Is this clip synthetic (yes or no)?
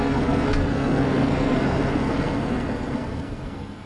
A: yes